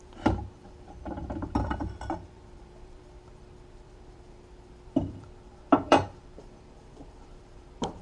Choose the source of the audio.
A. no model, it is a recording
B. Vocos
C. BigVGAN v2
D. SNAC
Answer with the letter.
C